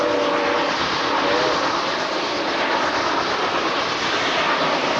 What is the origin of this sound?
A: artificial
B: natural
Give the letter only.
B